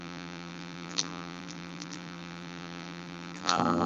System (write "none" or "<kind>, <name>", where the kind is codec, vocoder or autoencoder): vocoder, BigVGAN v2